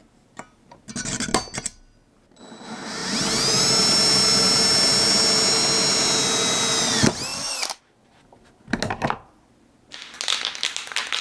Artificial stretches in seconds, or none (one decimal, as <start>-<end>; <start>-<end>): 7.3-7.8